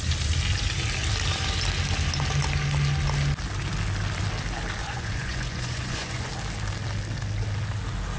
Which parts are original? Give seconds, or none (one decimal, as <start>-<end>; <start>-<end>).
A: 0.0-4.8; 6.3-8.2